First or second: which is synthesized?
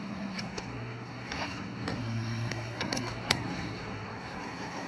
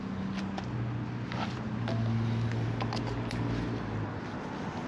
first